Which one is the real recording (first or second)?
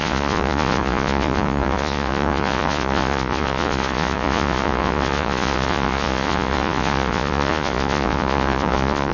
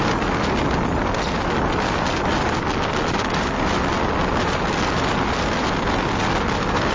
second